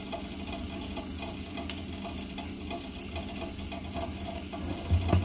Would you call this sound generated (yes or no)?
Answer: no